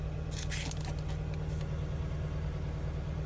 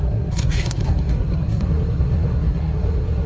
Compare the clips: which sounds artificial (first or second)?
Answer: second